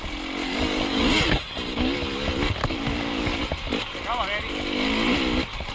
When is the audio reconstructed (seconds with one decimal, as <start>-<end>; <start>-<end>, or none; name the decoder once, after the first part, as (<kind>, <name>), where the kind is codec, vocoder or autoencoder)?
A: 0.4-1.0 (codec, DAC); 2.6-3.4